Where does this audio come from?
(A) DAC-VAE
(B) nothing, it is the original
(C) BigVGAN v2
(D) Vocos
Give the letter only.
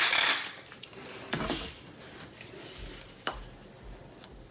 B